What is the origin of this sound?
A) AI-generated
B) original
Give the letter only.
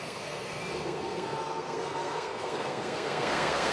A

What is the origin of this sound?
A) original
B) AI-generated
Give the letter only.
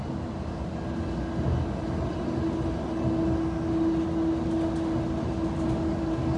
A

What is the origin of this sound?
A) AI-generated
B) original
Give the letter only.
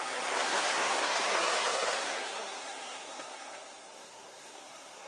A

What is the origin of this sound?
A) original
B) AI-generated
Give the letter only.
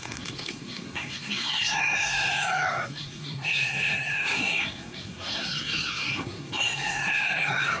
B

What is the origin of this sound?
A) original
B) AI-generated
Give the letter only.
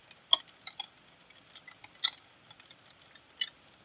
A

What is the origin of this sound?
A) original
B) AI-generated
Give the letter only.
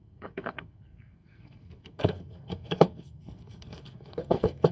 B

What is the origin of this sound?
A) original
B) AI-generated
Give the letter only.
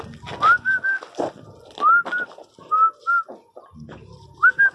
A